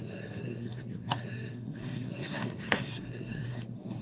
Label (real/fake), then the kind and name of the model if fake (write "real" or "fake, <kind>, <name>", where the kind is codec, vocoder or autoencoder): fake, codec, SNAC